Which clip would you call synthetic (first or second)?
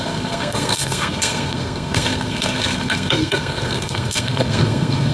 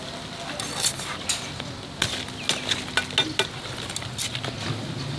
first